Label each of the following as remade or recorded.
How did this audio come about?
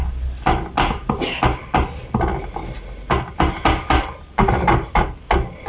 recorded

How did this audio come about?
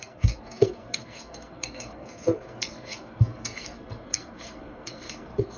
remade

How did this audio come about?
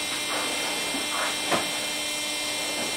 recorded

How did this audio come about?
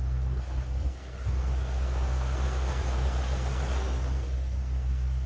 remade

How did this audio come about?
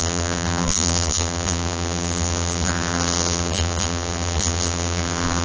remade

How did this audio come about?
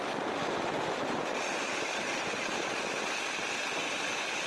recorded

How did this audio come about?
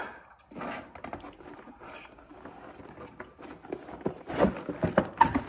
recorded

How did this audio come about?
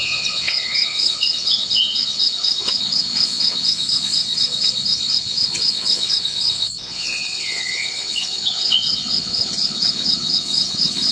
remade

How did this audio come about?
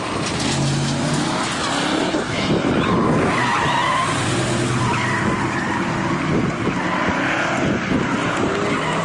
recorded